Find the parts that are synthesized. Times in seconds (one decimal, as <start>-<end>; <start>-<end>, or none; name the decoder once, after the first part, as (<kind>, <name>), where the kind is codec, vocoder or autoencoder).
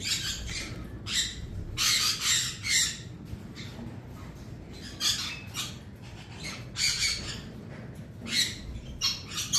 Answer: none